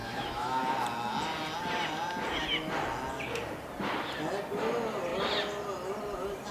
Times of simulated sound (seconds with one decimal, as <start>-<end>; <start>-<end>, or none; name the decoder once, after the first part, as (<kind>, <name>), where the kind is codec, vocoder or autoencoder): 0.0-0.6 (autoencoder, DAC-VAE)